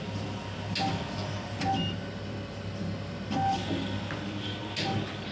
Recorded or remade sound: recorded